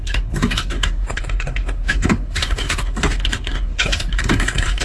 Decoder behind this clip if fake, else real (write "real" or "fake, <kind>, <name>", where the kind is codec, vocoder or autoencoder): fake, codec, SNAC